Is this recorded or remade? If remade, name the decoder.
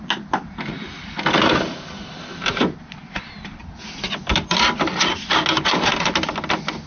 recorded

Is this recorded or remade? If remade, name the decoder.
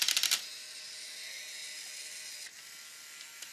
recorded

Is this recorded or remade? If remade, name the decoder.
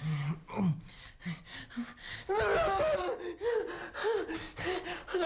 recorded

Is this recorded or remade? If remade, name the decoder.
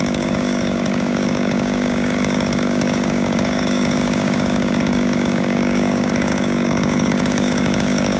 remade, codec, DAC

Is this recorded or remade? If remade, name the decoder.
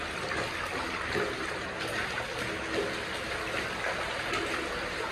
recorded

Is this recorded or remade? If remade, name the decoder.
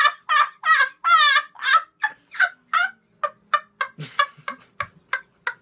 recorded